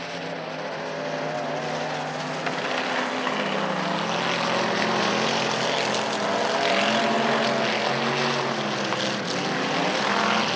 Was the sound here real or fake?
real